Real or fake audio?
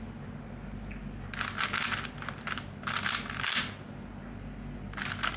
real